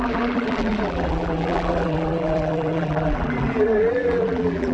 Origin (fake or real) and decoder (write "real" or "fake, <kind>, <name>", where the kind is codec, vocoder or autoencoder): fake, vocoder, BigVGAN v2